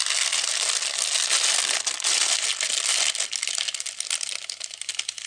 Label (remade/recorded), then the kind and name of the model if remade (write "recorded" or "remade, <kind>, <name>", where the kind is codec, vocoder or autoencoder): recorded